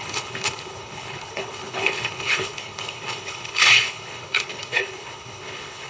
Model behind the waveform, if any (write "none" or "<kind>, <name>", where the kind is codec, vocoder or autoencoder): codec, HILCodec